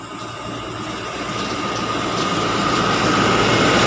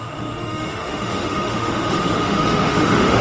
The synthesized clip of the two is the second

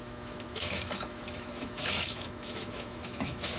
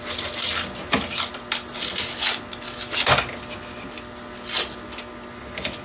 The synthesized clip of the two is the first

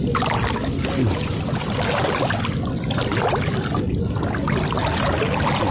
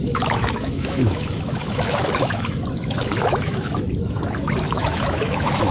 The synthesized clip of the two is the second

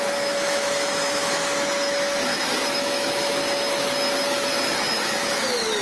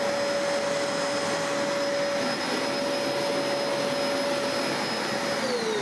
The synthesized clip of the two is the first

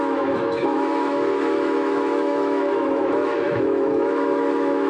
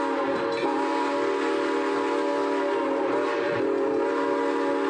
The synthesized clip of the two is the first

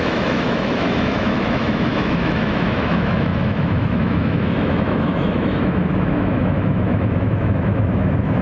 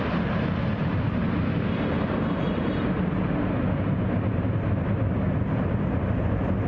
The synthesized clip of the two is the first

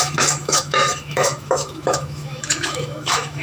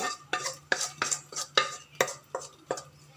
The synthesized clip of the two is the first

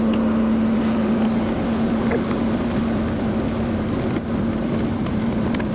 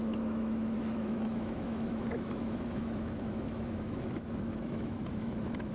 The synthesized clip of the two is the second